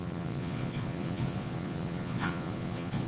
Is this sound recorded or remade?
remade